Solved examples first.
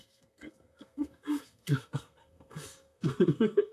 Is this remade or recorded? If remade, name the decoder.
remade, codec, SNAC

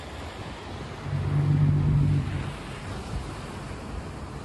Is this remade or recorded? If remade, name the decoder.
recorded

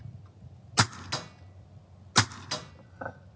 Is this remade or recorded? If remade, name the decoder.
recorded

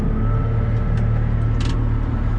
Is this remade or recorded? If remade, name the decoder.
recorded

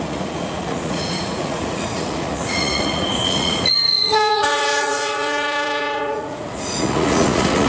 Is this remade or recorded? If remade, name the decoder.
remade, vocoder, Vocos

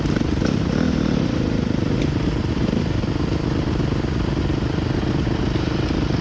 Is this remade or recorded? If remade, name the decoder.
recorded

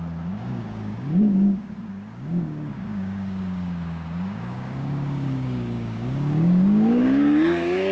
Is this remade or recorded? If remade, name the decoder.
remade, codec, DAC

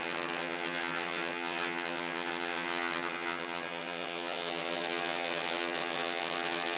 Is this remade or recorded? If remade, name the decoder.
remade, vocoder, HiFi-GAN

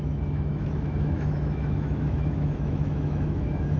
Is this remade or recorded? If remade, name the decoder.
remade, autoencoder, DAC-VAE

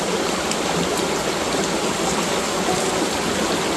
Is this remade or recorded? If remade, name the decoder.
recorded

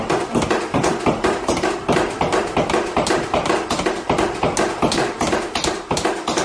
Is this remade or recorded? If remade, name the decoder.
recorded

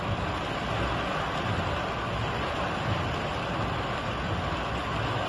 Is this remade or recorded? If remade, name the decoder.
recorded